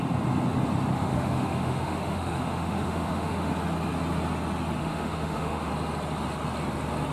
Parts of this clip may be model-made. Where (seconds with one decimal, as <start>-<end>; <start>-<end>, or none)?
1.0-3.5; 4.8-5.7